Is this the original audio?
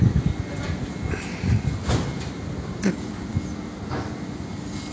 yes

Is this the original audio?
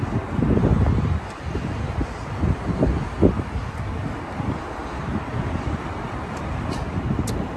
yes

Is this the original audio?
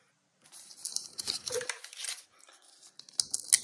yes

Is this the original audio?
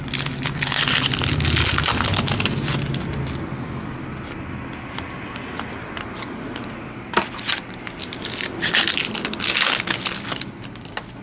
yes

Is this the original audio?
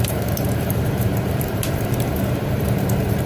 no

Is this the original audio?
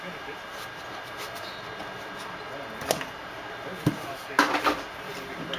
yes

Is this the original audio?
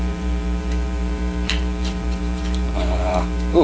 no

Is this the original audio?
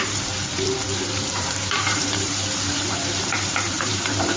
no